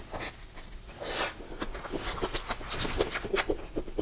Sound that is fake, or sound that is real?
real